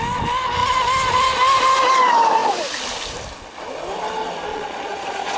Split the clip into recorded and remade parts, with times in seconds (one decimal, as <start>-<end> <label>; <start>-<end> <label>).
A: 0.0-4.5 recorded; 4.5-5.4 remade

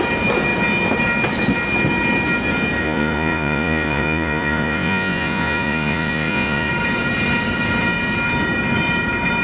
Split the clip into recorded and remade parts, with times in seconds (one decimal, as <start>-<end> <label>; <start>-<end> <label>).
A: 0.0-2.8 recorded; 2.8-6.7 remade; 6.7-9.4 recorded

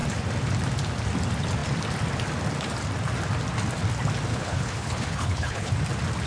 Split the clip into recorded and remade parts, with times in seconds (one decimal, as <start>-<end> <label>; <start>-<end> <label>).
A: 0.0-4.3 recorded; 4.3-5.7 remade; 5.7-6.3 recorded

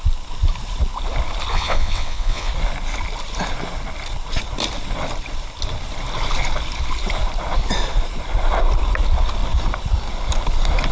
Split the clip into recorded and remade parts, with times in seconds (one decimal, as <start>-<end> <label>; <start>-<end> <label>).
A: 0.0-1.5 recorded; 1.5-2.5 remade; 2.5-10.9 recorded

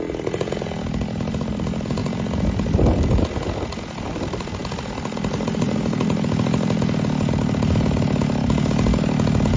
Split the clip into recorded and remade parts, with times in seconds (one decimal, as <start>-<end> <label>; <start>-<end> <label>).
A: 0.0-9.6 recorded

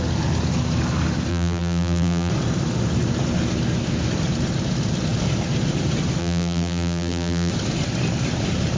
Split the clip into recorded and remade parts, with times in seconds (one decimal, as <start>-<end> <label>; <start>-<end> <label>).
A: 0.0-1.3 recorded; 1.3-2.3 remade; 2.3-6.2 recorded; 6.2-7.5 remade; 7.5-8.8 recorded

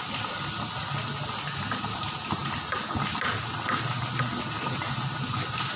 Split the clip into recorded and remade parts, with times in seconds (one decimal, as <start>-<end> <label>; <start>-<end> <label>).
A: 0.0-5.8 recorded